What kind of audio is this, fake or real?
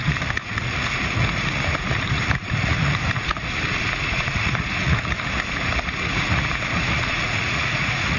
fake